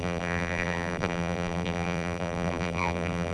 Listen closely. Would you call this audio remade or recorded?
remade